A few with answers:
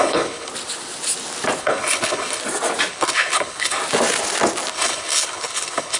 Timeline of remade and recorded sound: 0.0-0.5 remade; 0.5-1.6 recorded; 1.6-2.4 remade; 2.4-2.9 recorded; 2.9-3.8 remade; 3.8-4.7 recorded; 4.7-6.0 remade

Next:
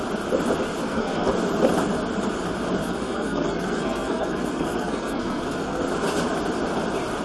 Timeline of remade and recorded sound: 0.0-0.8 recorded; 0.8-1.3 remade; 1.3-2.8 recorded; 2.8-5.8 remade; 5.8-7.2 recorded

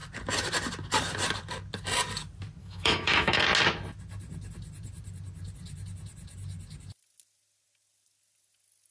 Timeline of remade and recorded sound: 0.0-2.6 recorded; 2.6-3.4 remade; 3.4-8.9 recorded